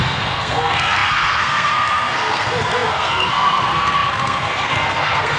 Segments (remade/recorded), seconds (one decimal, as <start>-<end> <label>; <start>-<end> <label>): 0.0-5.4 remade